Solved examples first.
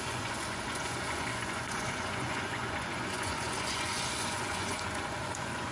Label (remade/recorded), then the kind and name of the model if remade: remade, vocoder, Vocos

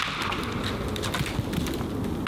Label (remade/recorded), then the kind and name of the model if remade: recorded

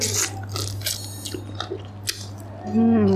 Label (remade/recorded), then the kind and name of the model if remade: recorded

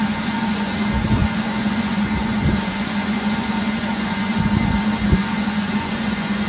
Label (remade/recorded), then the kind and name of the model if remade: remade, vocoder, Vocos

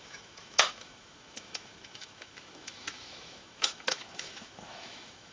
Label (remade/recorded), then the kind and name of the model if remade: remade, autoencoder, DAC-VAE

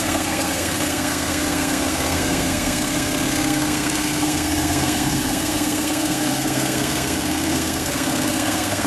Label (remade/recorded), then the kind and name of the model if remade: remade, codec, SNAC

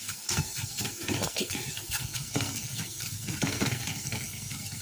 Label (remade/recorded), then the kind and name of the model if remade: remade, codec, SNAC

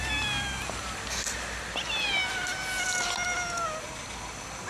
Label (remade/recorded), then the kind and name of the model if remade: recorded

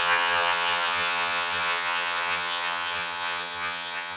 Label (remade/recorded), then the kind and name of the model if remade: remade, vocoder, HiFi-GAN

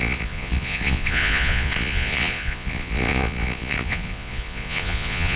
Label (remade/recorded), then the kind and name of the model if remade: remade, vocoder, Vocos